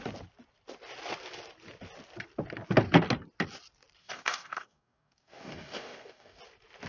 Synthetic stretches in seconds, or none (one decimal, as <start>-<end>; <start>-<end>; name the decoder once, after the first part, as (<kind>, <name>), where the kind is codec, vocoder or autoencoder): 4.0-6.4 (codec, DAC)